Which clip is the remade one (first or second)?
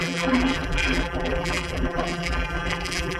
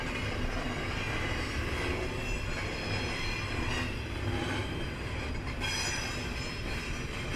first